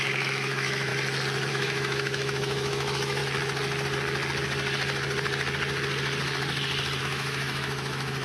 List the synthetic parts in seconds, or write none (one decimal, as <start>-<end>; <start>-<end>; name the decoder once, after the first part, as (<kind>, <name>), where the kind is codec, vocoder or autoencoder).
0.0-0.9 (autoencoder, DAC-VAE); 1.5-3.2; 7.0-8.2